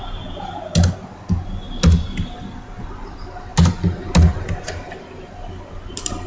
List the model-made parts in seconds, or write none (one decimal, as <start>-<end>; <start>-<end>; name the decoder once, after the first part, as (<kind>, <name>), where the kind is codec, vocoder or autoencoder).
none